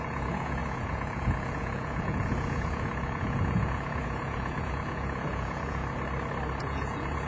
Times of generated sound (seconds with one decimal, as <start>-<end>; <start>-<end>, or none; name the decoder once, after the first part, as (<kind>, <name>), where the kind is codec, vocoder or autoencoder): 0.0-5.8 (vocoder, Vocos); 6.6-7.3